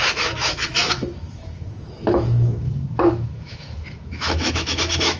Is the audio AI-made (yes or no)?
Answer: yes